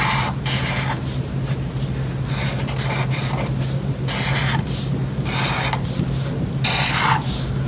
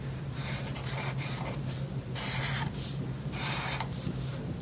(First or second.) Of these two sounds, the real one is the first